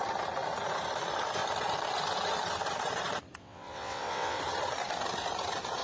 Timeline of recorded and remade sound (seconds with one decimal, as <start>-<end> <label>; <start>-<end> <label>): 0.0-3.4 recorded; 3.4-4.4 remade; 4.4-5.8 recorded

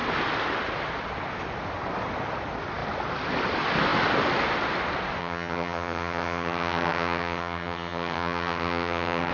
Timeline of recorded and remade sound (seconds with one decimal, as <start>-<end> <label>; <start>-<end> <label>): 0.0-5.2 recorded; 5.2-9.3 remade